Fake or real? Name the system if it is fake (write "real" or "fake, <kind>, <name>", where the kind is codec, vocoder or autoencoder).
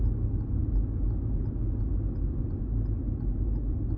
real